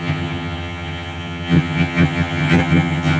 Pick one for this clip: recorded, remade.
remade